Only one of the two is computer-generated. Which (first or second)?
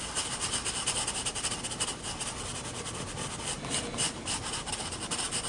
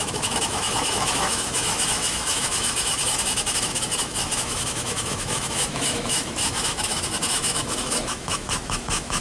second